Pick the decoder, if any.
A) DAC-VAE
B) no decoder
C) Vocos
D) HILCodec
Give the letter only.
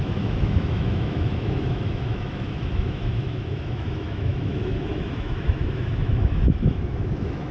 A